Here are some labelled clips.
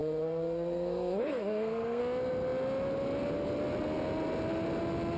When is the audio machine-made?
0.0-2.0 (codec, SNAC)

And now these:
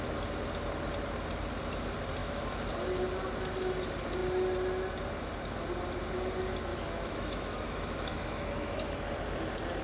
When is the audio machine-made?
2.2-2.7 (autoencoder, DAC-VAE); 6.7-9.1

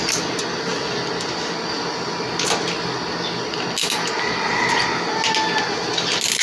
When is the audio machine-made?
none

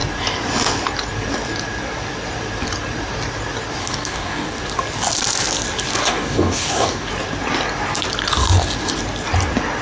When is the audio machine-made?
3.8-4.6 (codec, DAC); 6.0-7.1

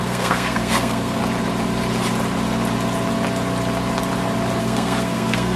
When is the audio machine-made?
0.0-1.2 (codec, SNAC); 4.6-5.6

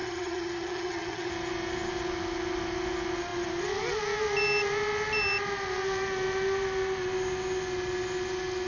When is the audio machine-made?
0.0-1.3 (vocoder, HiFi-GAN)

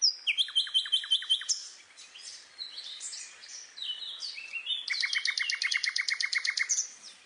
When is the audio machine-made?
0.9-1.6 (vocoder, BigVGAN v2); 2.8-3.6; 5.7-7.3

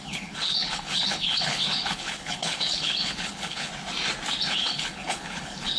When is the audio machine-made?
0.0-3.7 (codec, HILCodec); 4.5-5.8